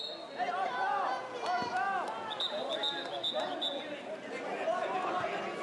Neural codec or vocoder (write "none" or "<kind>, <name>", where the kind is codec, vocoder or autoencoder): none